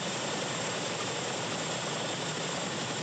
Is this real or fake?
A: real